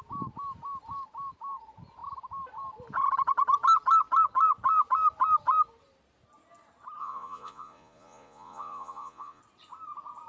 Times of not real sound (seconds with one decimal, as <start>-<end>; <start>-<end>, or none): 7.0-9.4